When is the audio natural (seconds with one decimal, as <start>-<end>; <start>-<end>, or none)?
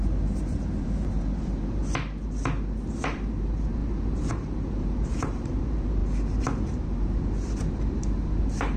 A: 1.8-3.0; 6.0-6.6